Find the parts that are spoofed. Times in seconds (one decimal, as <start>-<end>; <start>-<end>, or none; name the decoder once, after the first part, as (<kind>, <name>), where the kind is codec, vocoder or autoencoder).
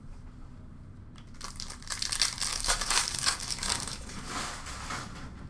2.5-4.3 (codec, DAC)